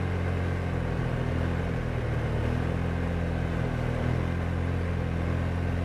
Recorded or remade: recorded